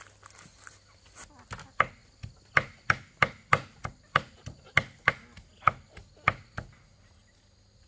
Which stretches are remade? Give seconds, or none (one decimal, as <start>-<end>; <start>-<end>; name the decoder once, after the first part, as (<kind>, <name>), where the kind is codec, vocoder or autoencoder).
none